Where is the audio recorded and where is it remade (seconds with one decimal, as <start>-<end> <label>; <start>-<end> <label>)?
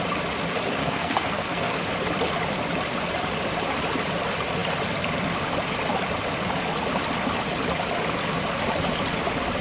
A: 0.0-0.8 recorded; 0.8-1.8 remade; 1.8-9.6 recorded